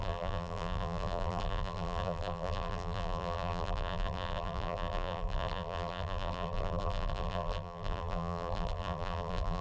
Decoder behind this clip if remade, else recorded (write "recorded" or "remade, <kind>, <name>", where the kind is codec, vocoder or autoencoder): remade, vocoder, BigVGAN v2